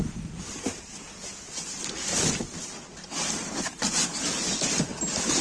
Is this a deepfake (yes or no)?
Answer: no